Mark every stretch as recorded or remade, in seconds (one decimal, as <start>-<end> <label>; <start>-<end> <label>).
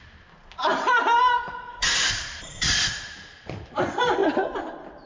0.0-0.7 recorded; 0.7-3.8 remade; 3.8-5.1 recorded